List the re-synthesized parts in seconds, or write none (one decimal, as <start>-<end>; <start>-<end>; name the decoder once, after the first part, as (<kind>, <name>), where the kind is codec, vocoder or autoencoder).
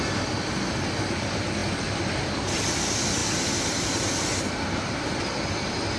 none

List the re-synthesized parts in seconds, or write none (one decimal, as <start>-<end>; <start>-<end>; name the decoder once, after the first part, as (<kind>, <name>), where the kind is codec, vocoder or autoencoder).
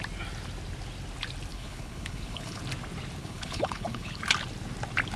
1.5-2.6 (codec, HILCodec); 3.2-4.2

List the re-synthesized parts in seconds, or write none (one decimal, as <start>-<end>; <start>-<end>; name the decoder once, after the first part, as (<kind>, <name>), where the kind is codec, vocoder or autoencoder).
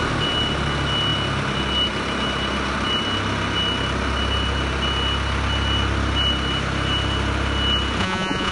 8.0-8.5 (vocoder, Vocos)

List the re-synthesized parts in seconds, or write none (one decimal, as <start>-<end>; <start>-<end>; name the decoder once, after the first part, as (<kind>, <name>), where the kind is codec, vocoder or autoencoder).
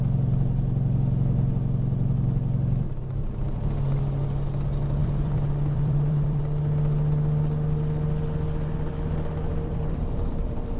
3.2-4.0 (vocoder, BigVGAN v2); 5.0-6.4; 9.5-10.4